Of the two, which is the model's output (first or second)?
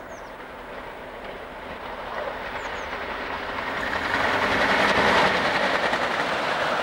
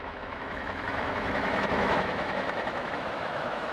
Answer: second